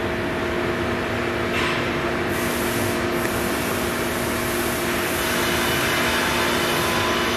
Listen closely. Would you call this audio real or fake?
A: real